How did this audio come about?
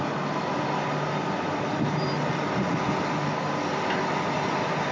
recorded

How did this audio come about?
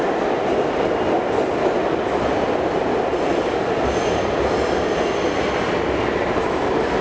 recorded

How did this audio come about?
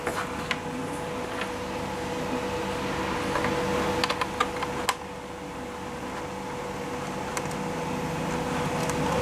recorded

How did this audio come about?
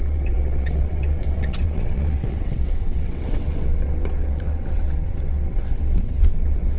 remade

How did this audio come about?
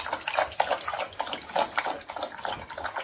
recorded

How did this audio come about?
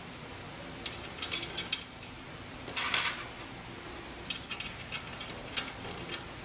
recorded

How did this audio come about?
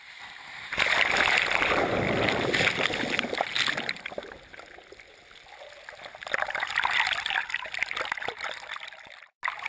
recorded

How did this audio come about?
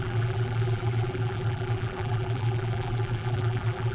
remade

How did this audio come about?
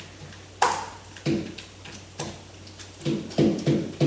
recorded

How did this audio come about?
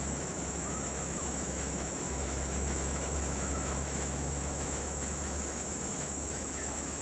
remade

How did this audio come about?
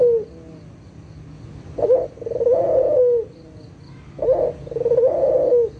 recorded